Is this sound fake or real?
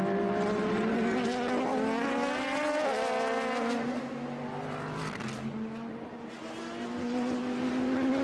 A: real